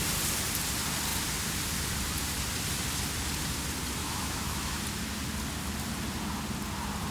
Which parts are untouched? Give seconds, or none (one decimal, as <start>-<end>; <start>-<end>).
0.0-4.0; 4.8-7.1